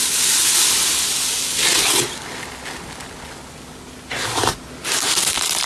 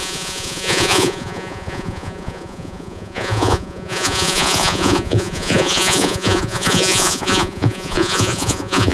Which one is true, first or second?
first